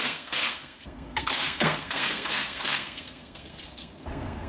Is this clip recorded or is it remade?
remade